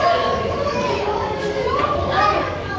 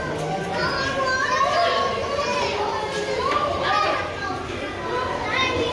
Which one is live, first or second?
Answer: second